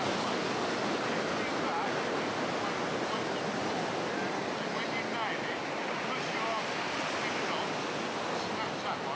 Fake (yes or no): no